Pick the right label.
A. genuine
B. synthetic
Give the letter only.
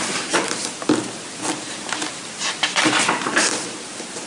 B